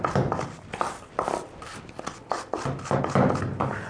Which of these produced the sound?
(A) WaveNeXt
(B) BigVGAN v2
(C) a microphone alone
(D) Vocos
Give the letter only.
C